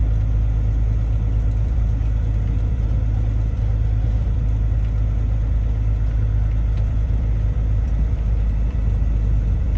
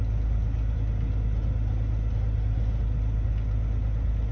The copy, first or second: first